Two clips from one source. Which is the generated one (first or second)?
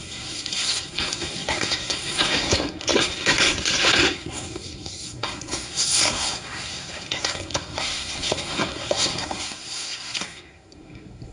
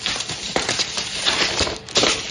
first